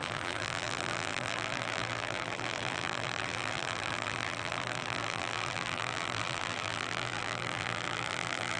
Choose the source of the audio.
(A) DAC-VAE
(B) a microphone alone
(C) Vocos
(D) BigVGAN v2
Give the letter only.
D